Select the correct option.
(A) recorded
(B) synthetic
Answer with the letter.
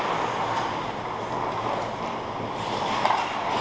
A